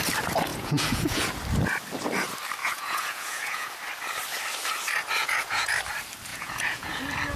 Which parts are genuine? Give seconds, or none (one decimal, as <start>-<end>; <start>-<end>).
0.0-0.5; 1.3-2.6; 3.7-5.2; 5.7-6.3; 7.0-7.4